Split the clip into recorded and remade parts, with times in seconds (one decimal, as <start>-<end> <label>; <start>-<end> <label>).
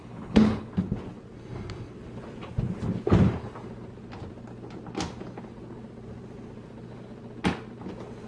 0.0-0.7 remade; 0.7-8.3 recorded